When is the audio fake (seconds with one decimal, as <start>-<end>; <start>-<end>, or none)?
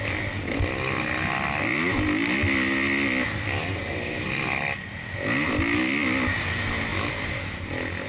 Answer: none